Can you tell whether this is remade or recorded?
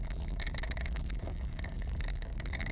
remade